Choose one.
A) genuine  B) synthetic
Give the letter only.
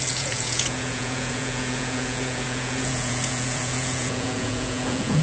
B